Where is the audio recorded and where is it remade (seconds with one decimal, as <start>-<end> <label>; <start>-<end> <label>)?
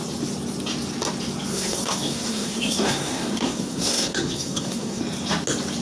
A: 0.0-1.5 recorded; 1.5-5.0 remade; 5.0-5.8 recorded